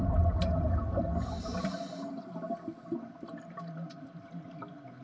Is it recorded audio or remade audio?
recorded